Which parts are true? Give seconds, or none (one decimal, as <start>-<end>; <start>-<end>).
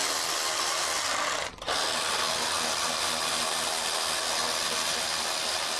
0.0-5.8